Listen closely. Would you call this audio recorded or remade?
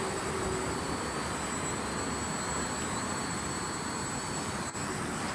recorded